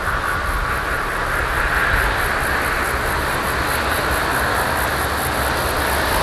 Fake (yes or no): no